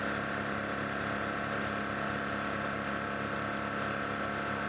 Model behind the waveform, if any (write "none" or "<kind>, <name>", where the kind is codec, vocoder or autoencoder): none